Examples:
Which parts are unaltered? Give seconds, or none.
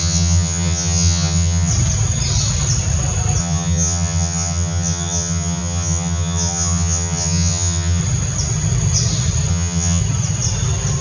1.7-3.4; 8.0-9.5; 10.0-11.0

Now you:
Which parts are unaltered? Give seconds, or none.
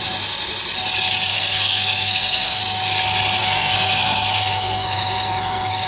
0.0-1.3; 2.6-3.4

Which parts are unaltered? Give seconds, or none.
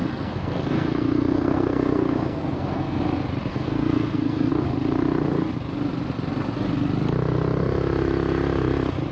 3.0-3.5; 4.5-9.1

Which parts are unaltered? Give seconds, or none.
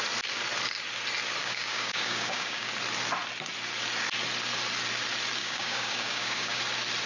0.0-1.4; 2.7-5.4; 6.6-7.1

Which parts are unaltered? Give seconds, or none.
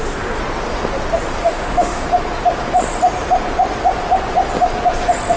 0.4-1.4; 2.0-5.4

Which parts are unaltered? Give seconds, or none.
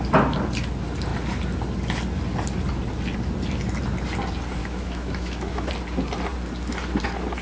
0.0-4.6; 5.7-7.4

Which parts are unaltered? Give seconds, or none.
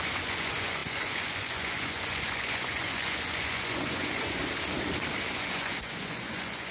4.4-5.3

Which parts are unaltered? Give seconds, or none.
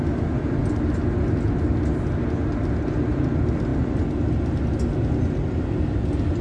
0.0-6.4